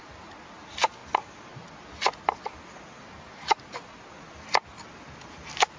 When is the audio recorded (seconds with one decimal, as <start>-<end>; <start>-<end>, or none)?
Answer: 0.0-5.8